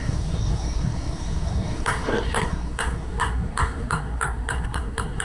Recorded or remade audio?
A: remade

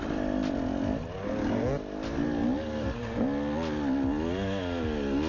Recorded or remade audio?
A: recorded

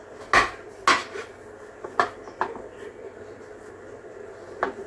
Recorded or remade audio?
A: recorded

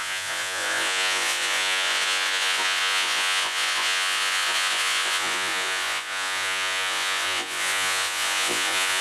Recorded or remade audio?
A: remade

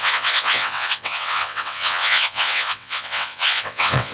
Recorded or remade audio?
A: remade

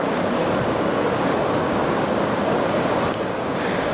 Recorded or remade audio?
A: remade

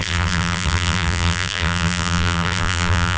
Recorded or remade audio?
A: remade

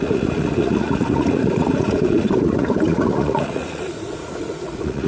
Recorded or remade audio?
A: remade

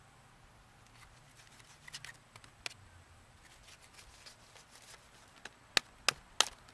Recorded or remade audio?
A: recorded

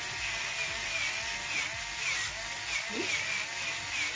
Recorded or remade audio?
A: recorded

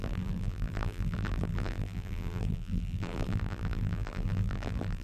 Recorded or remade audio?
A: remade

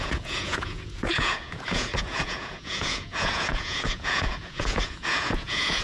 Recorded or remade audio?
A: remade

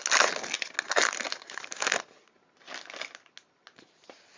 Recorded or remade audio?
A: recorded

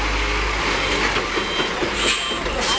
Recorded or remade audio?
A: recorded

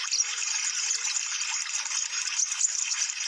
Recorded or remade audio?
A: recorded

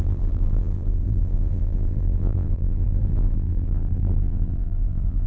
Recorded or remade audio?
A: remade